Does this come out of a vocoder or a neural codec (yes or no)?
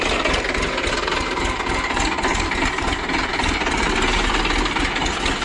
no